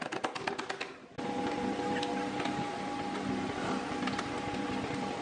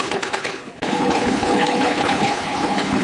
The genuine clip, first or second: first